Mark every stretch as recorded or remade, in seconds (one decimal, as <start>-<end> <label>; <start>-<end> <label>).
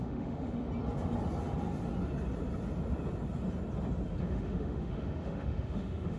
0.0-0.6 remade; 0.6-4.2 recorded; 4.2-6.2 remade